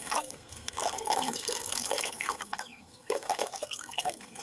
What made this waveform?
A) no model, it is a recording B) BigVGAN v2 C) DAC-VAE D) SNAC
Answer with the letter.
D